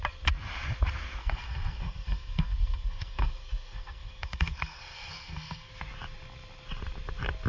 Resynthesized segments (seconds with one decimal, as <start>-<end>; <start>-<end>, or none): 1.2-5.7